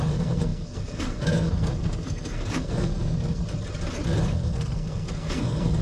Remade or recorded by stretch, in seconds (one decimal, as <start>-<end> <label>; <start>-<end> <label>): 0.0-3.4 remade; 3.4-4.2 recorded; 4.2-5.8 remade